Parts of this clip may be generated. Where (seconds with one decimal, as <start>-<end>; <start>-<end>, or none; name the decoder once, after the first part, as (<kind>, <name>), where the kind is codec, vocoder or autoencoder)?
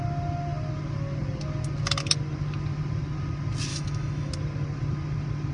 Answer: 3.7-4.3 (autoencoder, DAC-VAE)